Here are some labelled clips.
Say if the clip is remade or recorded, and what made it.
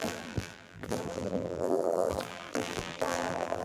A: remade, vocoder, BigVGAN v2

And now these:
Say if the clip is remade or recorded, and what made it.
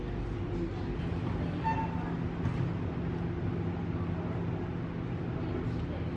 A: recorded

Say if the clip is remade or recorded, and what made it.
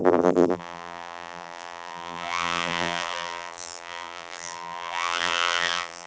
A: remade, vocoder, BigVGAN v2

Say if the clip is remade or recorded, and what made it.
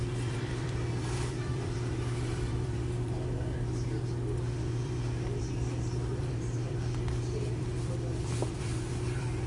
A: remade, vocoder, BigVGAN v2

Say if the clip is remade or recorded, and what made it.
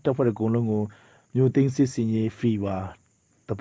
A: recorded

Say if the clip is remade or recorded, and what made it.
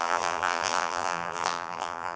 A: remade, vocoder, BigVGAN v2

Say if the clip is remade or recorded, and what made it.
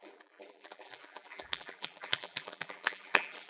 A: remade, vocoder, BigVGAN v2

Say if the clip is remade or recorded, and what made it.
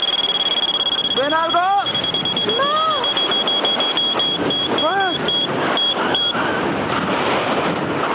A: recorded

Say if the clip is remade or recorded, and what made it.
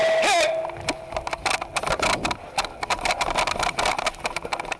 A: recorded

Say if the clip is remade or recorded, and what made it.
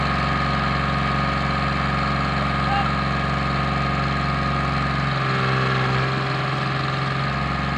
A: recorded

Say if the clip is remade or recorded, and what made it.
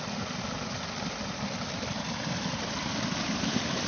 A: recorded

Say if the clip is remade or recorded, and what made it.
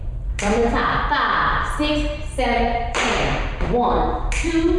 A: remade, vocoder, BigVGAN v2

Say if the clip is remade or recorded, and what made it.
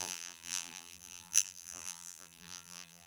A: remade, vocoder, BigVGAN v2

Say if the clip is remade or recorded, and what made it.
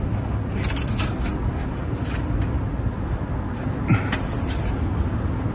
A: recorded